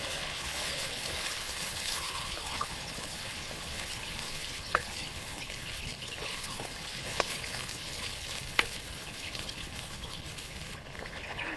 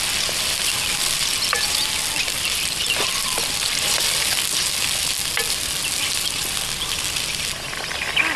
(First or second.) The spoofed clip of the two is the first